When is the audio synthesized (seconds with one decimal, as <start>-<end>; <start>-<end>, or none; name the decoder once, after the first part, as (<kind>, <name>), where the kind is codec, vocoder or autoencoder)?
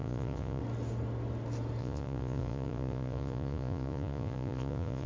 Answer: 0.0-0.6 (vocoder, Vocos); 1.8-5.1